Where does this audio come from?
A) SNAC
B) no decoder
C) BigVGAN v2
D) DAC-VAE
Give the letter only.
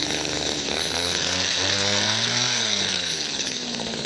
A